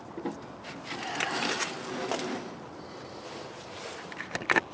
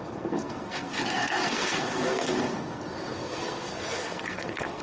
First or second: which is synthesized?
second